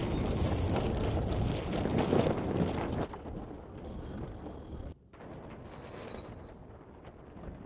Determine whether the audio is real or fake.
real